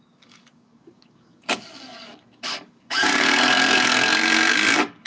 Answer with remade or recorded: remade